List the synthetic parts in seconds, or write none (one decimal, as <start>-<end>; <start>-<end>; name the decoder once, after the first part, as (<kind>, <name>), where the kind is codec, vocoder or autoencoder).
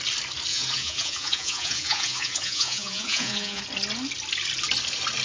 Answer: 0.5-3.6 (vocoder, Vocos)